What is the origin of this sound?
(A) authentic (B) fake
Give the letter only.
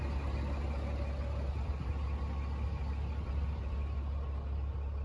A